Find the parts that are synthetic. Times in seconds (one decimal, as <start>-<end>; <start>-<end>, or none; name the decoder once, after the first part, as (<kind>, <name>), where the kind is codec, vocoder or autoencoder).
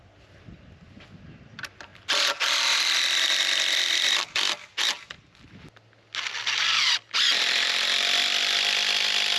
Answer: none